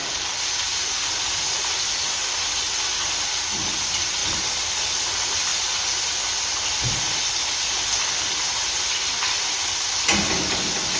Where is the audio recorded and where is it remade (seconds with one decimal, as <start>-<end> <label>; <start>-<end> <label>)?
0.0-1.7 remade; 1.7-4.2 recorded; 4.2-4.8 remade; 4.8-11.0 recorded